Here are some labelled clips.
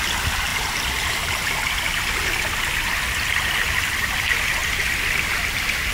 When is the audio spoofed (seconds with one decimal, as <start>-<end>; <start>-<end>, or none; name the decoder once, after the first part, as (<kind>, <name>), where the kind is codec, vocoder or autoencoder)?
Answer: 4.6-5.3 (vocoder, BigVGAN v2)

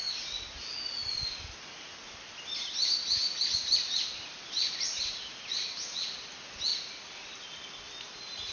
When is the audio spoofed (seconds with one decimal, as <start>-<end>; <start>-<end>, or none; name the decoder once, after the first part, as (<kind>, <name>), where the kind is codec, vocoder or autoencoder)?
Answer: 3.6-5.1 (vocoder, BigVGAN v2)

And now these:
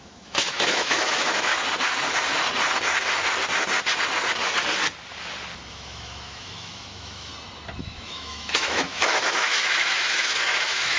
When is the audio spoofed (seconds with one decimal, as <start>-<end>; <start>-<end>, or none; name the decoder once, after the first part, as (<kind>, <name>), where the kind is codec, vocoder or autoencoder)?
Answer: 0.0-1.5 (autoencoder, DAC-VAE); 5.7-7.3; 7.8-11.0

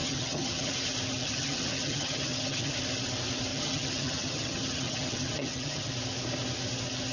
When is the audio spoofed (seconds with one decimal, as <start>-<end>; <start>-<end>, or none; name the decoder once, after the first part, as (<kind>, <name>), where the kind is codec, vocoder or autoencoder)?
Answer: 0.0-0.7 (vocoder, HiFi-GAN); 1.2-2.7; 3.5-5.9

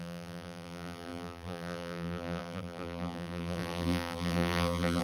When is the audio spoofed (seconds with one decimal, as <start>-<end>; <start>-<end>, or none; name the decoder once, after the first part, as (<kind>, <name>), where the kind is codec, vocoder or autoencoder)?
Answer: 0.0-5.0 (vocoder, BigVGAN v2)

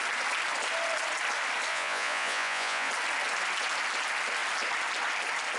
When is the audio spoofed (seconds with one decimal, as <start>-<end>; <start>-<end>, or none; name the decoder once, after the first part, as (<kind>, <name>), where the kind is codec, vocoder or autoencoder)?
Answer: 1.7-2.9 (vocoder, Vocos)